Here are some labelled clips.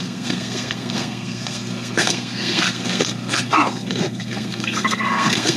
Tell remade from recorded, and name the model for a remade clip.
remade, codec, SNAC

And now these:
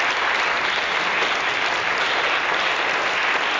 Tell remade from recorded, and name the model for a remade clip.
recorded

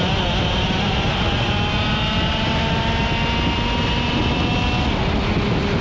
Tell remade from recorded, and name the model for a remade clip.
recorded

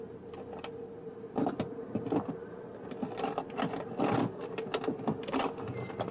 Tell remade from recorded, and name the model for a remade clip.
recorded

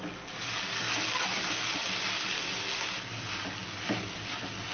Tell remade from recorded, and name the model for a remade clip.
recorded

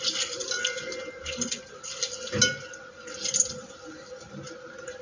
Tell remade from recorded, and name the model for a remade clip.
recorded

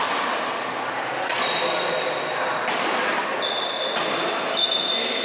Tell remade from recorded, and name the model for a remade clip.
recorded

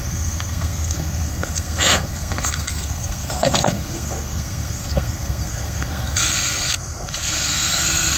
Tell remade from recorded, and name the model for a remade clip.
remade, codec, SNAC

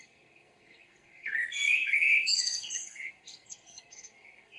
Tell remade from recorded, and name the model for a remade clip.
remade, codec, SNAC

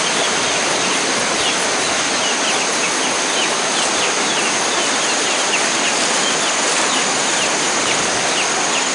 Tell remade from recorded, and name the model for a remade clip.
recorded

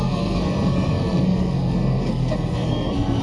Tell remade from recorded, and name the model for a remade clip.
remade, codec, SNAC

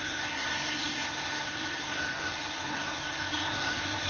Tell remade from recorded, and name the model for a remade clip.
remade, codec, SNAC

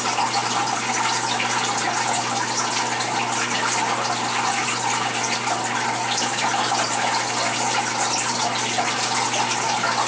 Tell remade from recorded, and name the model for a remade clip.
recorded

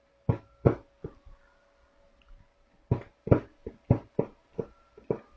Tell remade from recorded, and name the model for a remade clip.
recorded